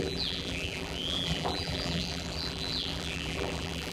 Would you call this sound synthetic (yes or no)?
yes